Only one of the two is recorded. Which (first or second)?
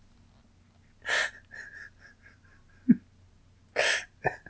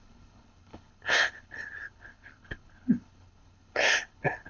first